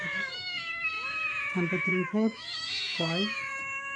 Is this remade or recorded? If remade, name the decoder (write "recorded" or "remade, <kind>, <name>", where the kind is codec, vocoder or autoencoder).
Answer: remade, autoencoder, DAC-VAE